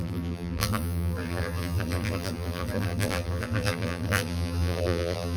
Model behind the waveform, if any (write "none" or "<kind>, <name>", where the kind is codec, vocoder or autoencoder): vocoder, BigVGAN v2